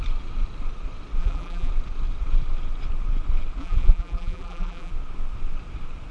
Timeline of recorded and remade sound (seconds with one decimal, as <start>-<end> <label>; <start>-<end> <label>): 0.0-1.2 recorded; 1.2-1.7 remade; 1.7-3.6 recorded; 3.6-4.9 remade; 4.9-6.1 recorded